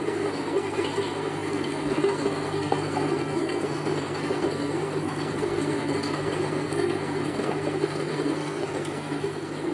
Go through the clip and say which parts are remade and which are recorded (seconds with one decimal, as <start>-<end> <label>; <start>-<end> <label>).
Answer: 0.0-9.7 remade